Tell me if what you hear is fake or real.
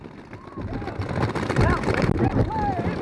real